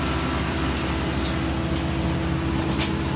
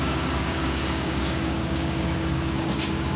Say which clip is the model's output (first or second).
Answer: second